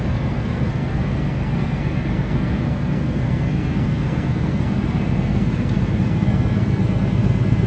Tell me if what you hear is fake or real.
fake